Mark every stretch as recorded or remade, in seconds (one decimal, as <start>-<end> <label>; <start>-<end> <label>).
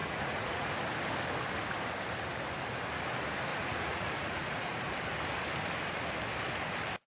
0.0-0.7 remade; 0.7-3.5 recorded; 3.5-4.9 remade; 4.9-7.1 recorded